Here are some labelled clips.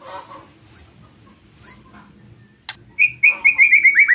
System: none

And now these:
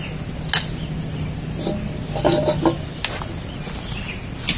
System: none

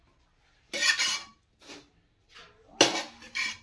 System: none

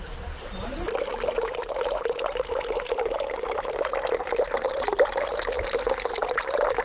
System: none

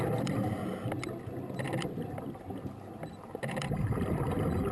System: none